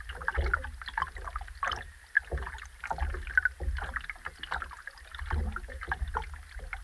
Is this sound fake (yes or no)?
no